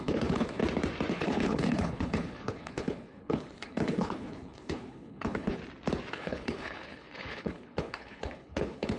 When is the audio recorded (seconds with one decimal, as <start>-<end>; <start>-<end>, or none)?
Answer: 0.6-1.1; 5.6-6.1